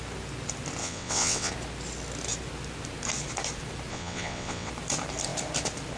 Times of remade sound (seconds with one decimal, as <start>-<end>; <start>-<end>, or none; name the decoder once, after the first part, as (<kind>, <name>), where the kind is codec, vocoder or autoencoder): 0.8-1.5 (vocoder, WaveNeXt); 3.9-4.7